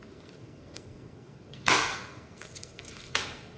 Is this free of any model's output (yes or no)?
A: no